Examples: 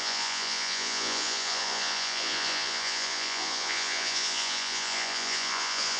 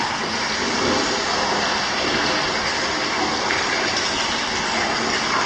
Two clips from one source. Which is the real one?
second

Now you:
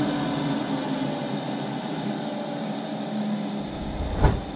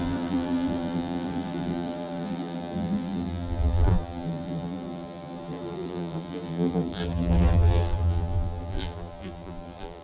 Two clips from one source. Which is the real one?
first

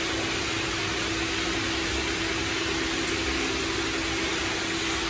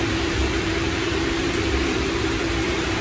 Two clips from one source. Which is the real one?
first